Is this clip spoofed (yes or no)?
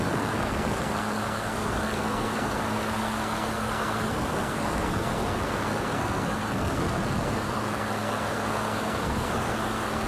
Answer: yes